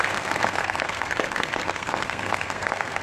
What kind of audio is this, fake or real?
fake